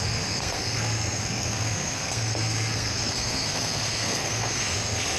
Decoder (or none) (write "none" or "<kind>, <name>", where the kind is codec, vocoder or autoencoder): codec, SNAC